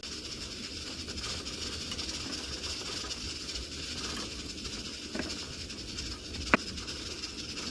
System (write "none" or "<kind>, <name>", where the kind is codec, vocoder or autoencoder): none